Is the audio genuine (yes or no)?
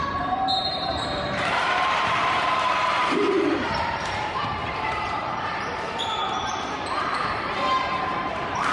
no